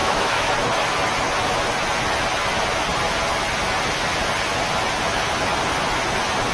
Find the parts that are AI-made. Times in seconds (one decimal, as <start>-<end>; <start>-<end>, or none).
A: 0.0-0.5